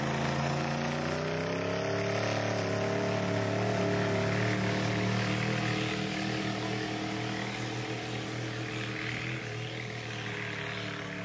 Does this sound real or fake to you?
real